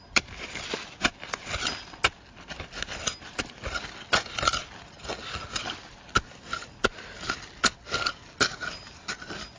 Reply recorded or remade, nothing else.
recorded